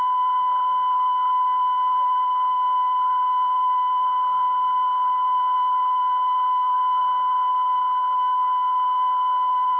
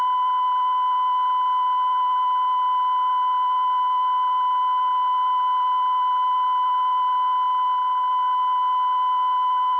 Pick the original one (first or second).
second